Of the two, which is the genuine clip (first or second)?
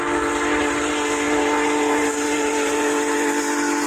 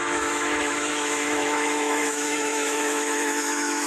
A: first